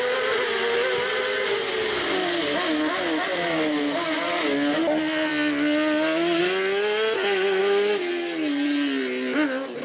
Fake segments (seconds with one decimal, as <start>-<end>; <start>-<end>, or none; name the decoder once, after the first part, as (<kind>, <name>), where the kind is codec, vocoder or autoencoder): none